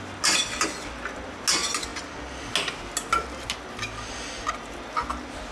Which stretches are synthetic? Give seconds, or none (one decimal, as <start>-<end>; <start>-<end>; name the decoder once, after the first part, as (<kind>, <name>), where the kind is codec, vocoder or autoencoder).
none